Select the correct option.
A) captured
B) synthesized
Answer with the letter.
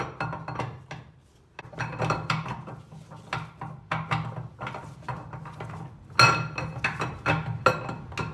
A